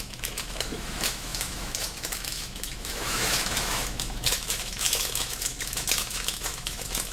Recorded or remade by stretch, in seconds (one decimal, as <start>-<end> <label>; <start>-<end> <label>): 0.0-7.1 remade